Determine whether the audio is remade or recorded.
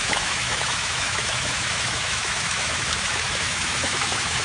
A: remade